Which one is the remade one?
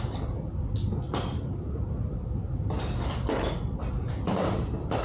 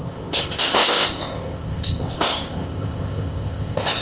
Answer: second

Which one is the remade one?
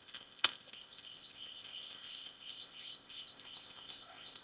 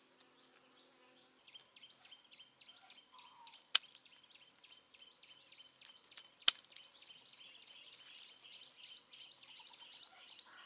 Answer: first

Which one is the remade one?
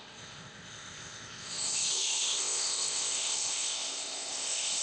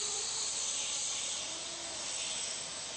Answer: first